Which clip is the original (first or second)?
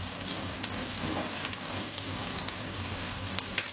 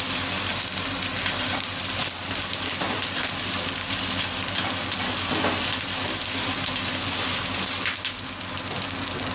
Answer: second